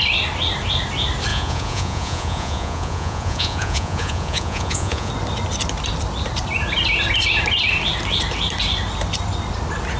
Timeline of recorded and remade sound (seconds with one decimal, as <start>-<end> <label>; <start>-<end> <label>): 0.0-1.3 recorded; 1.3-5.1 remade; 5.1-10.0 recorded